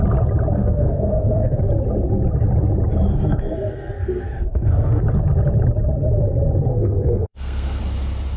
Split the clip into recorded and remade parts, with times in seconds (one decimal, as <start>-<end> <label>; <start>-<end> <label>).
0.0-0.6 recorded; 0.6-1.6 remade; 1.6-3.1 recorded; 3.1-5.0 remade; 5.0-6.7 recorded; 6.7-7.8 remade; 7.8-8.4 recorded